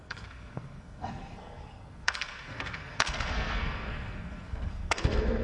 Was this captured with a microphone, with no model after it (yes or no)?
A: no